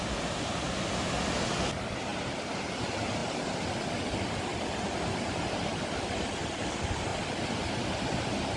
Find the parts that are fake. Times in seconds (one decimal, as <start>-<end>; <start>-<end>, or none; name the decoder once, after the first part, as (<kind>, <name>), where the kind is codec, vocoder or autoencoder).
none

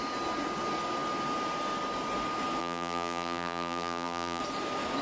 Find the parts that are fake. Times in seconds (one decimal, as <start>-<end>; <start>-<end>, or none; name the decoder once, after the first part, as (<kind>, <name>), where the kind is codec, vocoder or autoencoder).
2.6-4.4 (vocoder, BigVGAN v2)

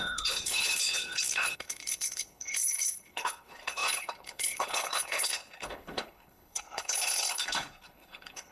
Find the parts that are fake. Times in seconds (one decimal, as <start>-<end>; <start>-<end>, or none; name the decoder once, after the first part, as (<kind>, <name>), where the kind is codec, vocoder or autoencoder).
0.0-8.5 (codec, HILCodec)

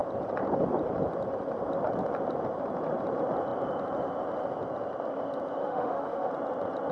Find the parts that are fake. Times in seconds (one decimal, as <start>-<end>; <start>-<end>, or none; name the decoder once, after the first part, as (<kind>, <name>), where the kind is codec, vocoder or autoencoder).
5.6-6.3 (autoencoder, DAC-VAE)

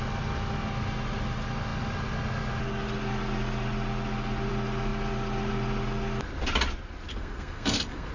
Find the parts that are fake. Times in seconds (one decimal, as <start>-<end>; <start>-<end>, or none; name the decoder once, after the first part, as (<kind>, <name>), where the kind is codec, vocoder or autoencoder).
7.1-8.1 (codec, SNAC)

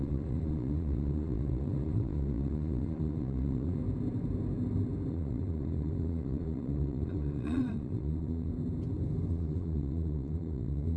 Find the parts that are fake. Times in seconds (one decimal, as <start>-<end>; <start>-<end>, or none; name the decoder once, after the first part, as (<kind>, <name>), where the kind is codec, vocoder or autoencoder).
0.0-3.8 (vocoder, Vocos); 5.1-8.5; 9.3-11.0

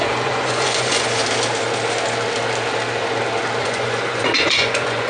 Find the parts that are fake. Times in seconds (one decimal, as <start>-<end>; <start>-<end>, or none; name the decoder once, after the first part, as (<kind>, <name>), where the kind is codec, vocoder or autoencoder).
0.0-1.2 (vocoder, Vocos); 3.6-5.1